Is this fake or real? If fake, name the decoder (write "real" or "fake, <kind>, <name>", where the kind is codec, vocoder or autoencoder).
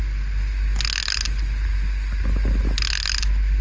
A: real